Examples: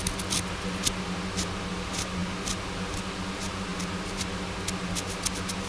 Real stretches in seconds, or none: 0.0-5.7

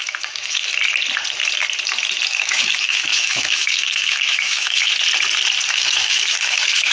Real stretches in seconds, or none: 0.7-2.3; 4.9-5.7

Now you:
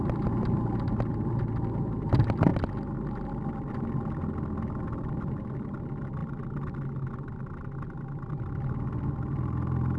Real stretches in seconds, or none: 0.0-10.0